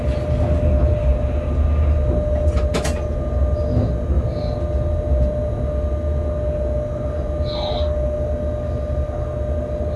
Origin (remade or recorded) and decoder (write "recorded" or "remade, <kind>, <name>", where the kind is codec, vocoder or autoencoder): recorded